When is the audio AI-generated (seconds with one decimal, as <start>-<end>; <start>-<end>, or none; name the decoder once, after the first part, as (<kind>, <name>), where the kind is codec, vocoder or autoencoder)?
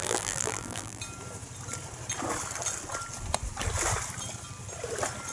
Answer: 0.0-1.0 (vocoder, BigVGAN v2)